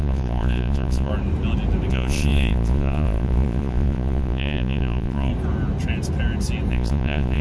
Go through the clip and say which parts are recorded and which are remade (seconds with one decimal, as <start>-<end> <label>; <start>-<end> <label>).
0.0-1.1 remade; 1.1-1.9 recorded; 1.9-5.3 remade; 5.3-6.7 recorded; 6.7-7.4 remade